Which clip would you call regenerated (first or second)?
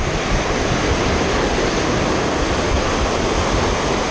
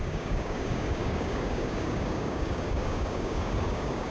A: second